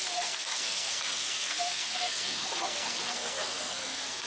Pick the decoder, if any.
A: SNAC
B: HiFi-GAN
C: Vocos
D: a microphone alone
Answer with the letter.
A